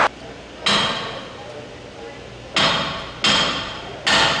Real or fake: real